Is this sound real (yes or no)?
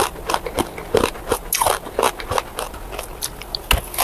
yes